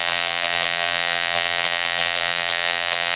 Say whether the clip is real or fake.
fake